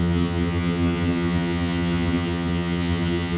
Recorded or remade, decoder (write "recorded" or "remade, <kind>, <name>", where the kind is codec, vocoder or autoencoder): remade, vocoder, HiFi-GAN